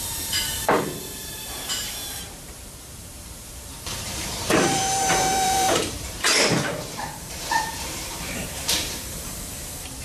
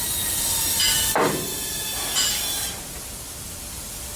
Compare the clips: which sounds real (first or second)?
second